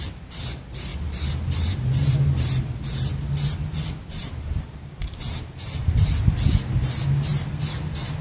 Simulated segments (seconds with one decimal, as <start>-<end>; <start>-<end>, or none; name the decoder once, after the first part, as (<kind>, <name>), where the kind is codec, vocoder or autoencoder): none